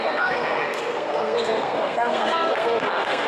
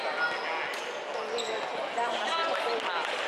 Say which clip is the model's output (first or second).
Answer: first